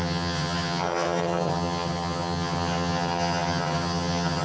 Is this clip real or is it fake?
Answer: fake